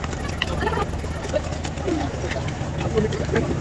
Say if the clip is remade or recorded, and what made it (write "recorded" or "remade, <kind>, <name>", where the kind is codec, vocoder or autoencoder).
recorded